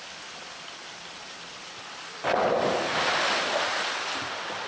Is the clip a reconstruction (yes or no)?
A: no